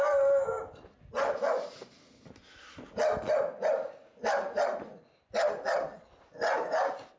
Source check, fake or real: real